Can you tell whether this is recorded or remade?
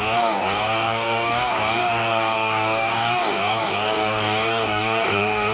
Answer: remade